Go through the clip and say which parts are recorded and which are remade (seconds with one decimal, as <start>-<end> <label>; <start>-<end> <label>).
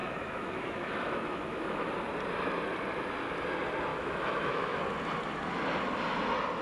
0.0-1.9 remade; 1.9-3.9 recorded; 3.9-4.8 remade; 4.8-6.6 recorded